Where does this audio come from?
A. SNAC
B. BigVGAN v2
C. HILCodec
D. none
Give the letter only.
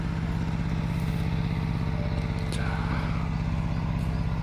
D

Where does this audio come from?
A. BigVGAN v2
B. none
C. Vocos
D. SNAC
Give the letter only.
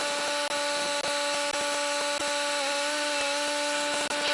B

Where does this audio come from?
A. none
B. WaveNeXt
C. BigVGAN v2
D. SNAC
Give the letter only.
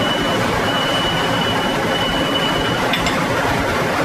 C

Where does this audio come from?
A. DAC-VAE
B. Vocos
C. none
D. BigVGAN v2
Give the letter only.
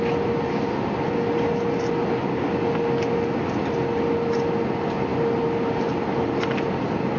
C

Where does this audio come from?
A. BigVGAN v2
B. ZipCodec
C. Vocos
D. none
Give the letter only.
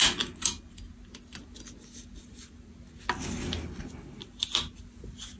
D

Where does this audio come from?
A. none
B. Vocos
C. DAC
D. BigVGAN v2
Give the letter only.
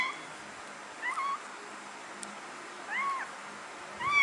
A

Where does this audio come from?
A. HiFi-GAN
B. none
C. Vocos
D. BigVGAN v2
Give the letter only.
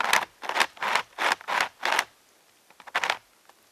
B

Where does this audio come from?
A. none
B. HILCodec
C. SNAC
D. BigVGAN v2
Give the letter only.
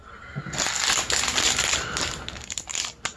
A